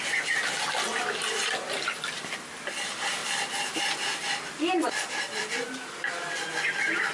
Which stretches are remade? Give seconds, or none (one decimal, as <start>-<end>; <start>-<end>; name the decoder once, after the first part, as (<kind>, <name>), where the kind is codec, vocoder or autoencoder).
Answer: none

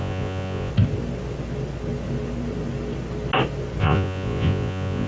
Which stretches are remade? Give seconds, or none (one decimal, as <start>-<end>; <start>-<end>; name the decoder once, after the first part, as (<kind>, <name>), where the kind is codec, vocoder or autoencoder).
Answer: 0.0-0.7 (vocoder, Vocos); 3.8-5.1

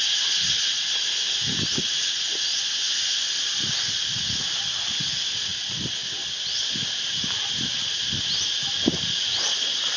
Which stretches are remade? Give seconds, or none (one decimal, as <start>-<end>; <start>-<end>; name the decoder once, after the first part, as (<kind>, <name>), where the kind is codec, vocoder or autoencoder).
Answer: 2.5-3.3 (vocoder, Vocos)

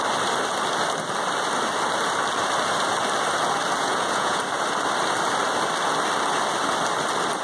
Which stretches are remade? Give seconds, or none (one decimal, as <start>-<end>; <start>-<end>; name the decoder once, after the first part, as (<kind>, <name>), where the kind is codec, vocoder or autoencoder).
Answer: 3.8-4.4 (vocoder, Vocos)

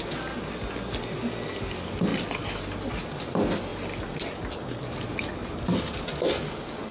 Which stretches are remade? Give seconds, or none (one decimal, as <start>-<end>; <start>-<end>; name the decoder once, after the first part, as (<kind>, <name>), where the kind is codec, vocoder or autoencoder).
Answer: none